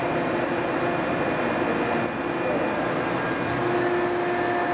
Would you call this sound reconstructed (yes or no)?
no